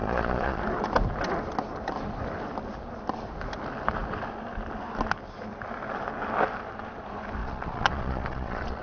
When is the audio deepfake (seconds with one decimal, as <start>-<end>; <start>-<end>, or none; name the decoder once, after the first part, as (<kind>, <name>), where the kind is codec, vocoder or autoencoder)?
0.0-0.6 (vocoder, Vocos); 7.4-8.8